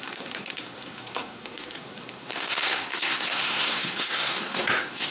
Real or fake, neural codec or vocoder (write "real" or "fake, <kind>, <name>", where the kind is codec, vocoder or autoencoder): fake, codec, SNAC